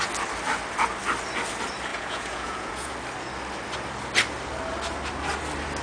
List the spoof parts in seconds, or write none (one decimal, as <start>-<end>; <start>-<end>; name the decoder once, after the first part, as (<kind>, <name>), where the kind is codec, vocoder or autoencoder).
1.9-2.9 (vocoder, Vocos)